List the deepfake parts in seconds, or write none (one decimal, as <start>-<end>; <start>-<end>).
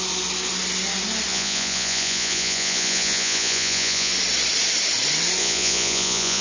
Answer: 1.3-4.1; 5.4-6.4